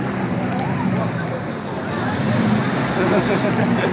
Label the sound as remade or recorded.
recorded